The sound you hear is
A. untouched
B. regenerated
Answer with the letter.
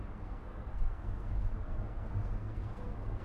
B